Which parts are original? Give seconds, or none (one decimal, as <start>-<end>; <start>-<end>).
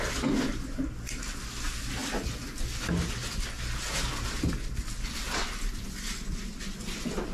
0.0-7.3